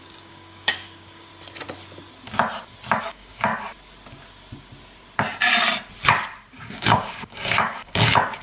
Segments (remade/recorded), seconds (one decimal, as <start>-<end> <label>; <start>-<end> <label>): 0.0-1.3 remade; 1.3-3.0 recorded; 3.0-3.5 remade; 3.5-6.5 recorded; 6.5-8.4 remade